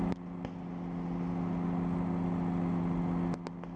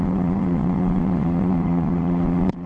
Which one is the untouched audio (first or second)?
first